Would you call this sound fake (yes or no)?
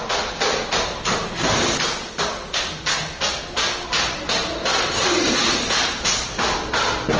no